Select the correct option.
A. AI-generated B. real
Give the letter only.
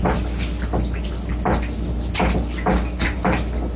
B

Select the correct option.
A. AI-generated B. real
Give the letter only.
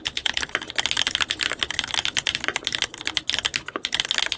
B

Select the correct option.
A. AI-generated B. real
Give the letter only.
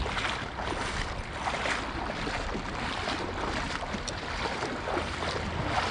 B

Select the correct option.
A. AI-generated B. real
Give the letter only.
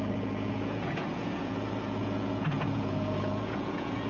A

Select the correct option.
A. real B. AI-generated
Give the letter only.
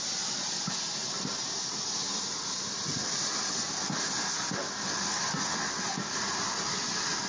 A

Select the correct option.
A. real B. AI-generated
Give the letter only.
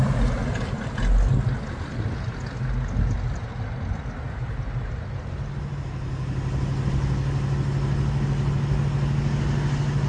A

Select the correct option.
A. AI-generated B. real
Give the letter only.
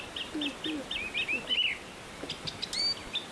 B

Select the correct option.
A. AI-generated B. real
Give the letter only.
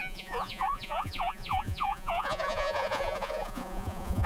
A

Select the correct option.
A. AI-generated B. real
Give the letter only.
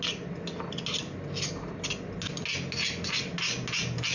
B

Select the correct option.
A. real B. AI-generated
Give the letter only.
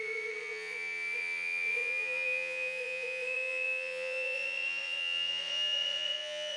B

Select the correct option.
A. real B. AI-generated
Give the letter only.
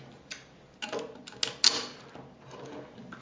A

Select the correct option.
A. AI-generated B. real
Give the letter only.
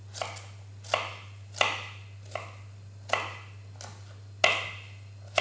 B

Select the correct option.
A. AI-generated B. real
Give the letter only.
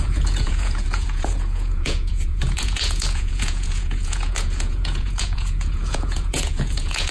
A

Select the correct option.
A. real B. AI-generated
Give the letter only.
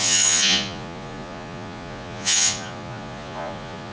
B